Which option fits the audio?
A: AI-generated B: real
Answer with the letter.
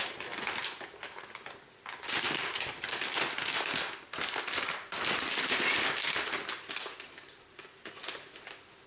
B